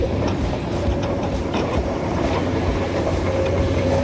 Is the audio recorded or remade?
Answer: remade